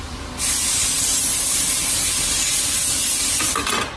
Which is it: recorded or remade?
recorded